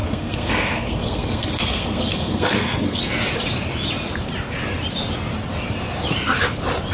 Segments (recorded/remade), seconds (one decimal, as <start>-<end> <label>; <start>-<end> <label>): 0.0-3.0 remade; 3.0-6.9 recorded